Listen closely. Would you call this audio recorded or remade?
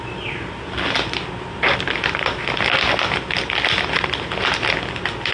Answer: recorded